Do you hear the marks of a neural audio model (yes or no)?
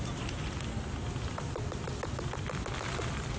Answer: no